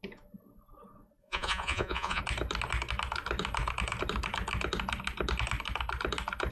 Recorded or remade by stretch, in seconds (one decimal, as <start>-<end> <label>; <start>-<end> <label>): 0.0-1.2 recorded; 1.2-2.2 remade; 2.2-6.5 recorded